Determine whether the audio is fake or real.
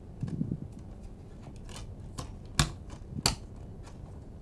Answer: real